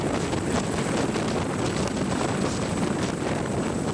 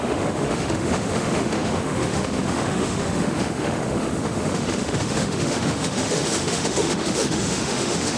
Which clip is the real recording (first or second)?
first